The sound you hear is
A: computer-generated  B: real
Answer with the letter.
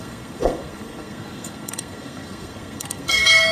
A